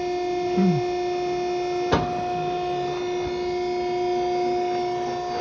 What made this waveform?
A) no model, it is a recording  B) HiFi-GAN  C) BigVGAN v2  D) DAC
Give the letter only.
A